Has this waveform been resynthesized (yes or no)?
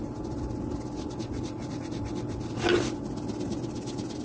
no